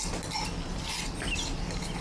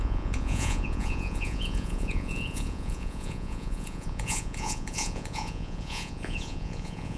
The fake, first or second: second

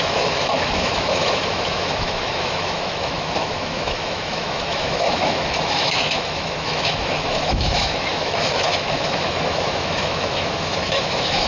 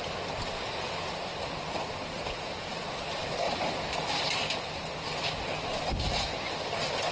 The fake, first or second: first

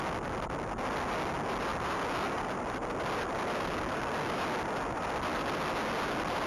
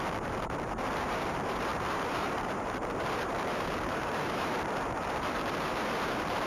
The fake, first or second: second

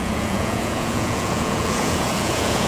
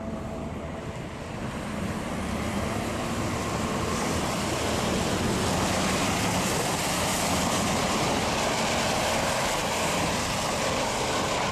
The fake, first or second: first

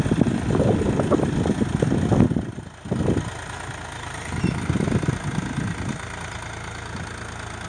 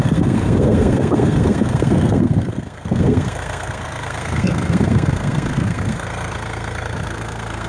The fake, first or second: second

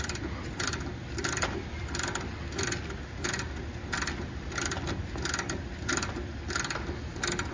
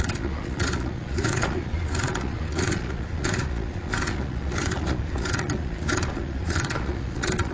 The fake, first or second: second